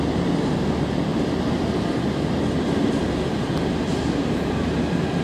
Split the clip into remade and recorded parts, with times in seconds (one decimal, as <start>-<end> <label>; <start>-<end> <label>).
0.0-1.1 recorded; 1.1-4.2 remade; 4.2-5.2 recorded